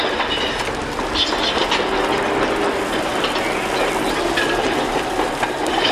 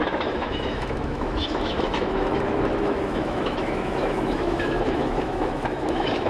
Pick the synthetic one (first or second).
second